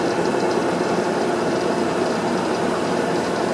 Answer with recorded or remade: remade